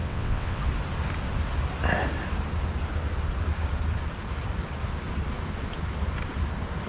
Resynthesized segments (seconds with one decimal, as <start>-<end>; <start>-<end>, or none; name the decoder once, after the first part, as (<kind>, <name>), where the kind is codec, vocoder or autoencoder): 0.0-0.6 (vocoder, WaveNeXt)